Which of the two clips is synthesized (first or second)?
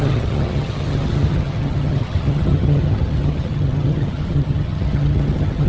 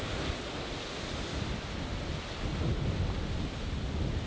first